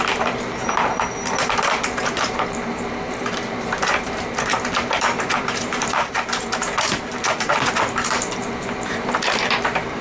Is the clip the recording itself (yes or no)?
no